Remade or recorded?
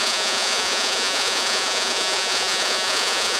remade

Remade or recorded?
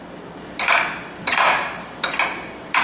recorded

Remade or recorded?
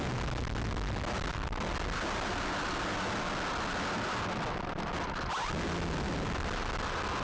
recorded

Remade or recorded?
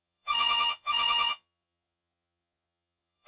remade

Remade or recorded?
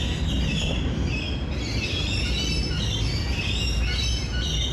recorded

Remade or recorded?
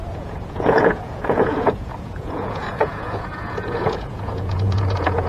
remade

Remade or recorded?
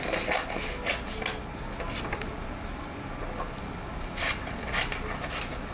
recorded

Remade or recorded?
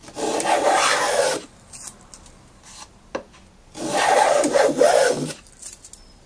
recorded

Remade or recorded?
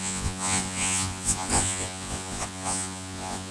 remade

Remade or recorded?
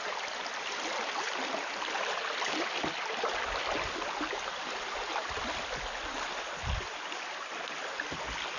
recorded